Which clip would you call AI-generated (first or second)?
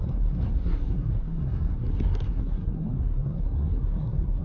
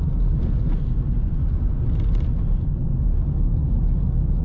first